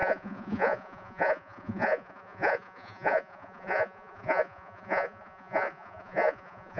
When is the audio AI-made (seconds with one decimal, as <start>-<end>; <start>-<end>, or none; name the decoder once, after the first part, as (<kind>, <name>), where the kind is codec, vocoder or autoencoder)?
0.0-6.8 (vocoder, Vocos)